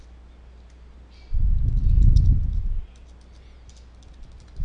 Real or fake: real